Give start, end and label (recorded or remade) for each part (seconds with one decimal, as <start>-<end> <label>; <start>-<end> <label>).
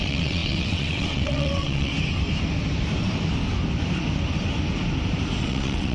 0.0-1.9 remade; 1.9-5.4 recorded; 5.4-5.9 remade